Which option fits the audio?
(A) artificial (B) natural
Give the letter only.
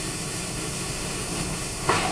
A